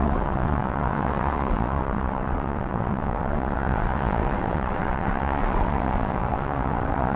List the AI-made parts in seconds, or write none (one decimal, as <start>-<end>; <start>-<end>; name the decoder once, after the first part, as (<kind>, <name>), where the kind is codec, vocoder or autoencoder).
0.0-7.2 (vocoder, WaveNeXt)

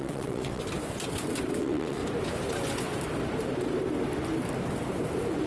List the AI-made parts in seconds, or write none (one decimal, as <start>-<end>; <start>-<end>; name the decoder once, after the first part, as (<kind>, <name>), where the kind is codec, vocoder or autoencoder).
0.0-0.6 (vocoder, WaveNeXt); 1.6-2.0

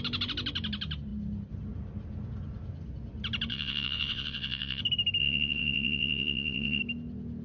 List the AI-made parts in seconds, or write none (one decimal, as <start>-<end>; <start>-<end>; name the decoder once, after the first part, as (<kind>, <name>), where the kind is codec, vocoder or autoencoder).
3.5-4.8 (vocoder, WaveNeXt); 5.2-6.8